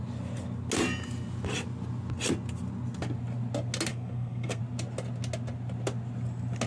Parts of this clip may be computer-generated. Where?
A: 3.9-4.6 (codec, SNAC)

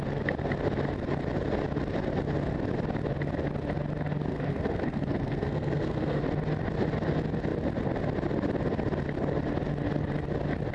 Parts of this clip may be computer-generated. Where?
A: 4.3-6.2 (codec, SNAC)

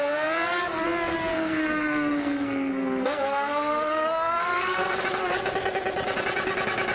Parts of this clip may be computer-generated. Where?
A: 1.3-5.0 (codec, SNAC)

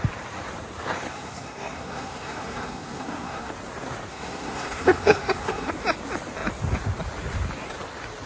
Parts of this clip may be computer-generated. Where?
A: 1.1-3.5 (codec, SNAC); 4.1-5.7